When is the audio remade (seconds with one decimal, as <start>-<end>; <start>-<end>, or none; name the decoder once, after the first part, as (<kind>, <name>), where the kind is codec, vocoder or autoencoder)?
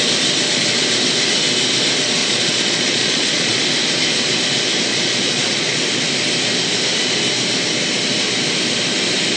2.2-3.6 (vocoder, Vocos); 4.9-5.8